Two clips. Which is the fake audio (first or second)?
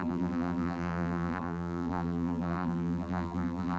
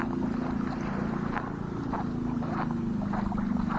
first